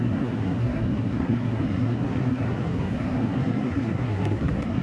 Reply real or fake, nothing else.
fake